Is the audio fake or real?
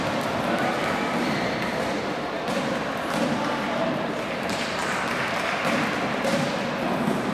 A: real